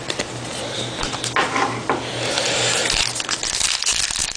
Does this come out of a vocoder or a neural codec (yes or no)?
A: no